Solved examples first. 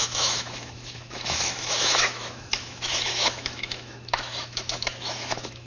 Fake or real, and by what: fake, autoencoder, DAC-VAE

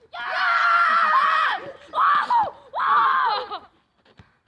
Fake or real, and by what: real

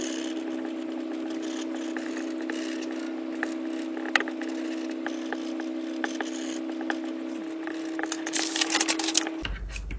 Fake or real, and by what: real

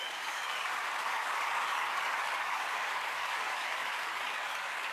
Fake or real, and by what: fake, codec, DAC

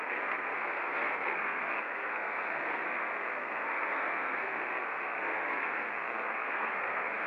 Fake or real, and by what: fake, codec, SNAC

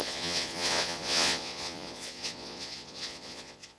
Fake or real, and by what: fake, vocoder, Vocos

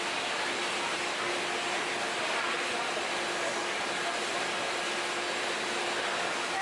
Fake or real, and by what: real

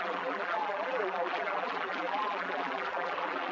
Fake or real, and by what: fake, vocoder, BigVGAN v2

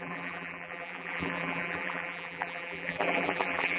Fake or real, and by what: fake, vocoder, BigVGAN v2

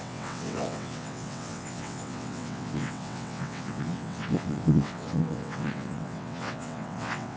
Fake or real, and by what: fake, vocoder, WaveNeXt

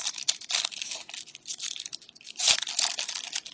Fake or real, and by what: real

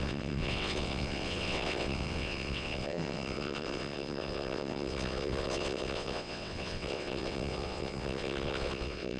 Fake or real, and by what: fake, vocoder, WaveNeXt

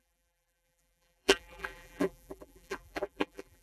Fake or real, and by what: fake, vocoder, BigVGAN v2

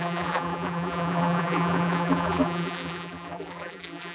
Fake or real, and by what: fake, vocoder, BigVGAN v2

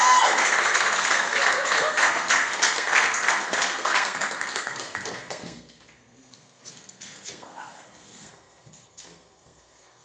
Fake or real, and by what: fake, codec, SNAC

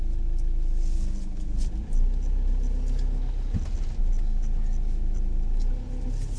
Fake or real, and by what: real